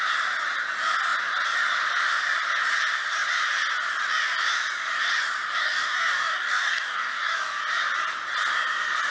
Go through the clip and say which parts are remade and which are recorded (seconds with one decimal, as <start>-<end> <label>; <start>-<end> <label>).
0.0-5.6 recorded; 5.6-7.6 remade; 7.6-9.1 recorded